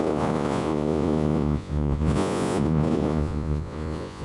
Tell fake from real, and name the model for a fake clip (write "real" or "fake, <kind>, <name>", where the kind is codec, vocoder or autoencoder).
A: fake, vocoder, Vocos